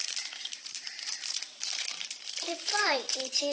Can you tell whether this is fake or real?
fake